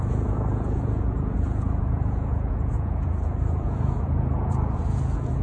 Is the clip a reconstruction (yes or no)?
yes